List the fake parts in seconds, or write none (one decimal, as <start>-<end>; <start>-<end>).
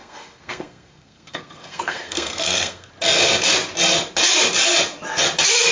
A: 0.0-2.9